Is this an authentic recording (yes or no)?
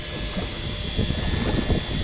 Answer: yes